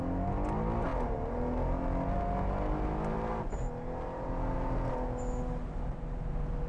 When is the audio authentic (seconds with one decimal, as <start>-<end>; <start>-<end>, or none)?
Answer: 0.0-6.7